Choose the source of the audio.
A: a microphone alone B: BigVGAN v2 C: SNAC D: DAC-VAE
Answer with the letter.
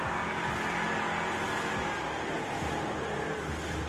A